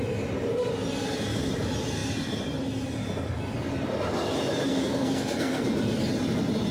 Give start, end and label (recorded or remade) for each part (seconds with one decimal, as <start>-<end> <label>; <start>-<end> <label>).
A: 0.0-4.7 recorded; 4.7-5.7 remade; 5.7-6.7 recorded